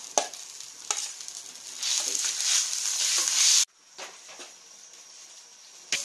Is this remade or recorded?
recorded